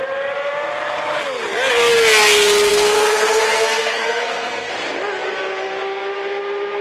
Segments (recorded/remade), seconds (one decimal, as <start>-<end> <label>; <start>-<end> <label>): 0.0-2.7 recorded; 2.7-4.7 remade; 4.7-6.8 recorded